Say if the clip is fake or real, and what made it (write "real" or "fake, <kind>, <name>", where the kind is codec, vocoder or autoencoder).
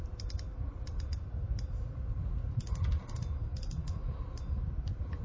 real